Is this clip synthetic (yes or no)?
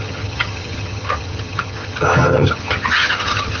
yes